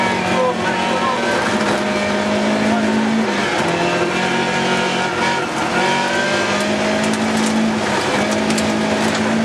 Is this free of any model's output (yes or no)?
yes